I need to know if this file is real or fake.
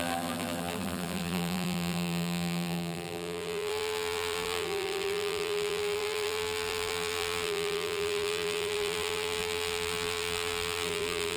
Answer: fake